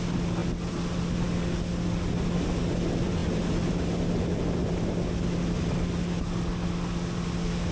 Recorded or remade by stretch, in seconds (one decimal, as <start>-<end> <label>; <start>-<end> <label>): 0.0-7.7 recorded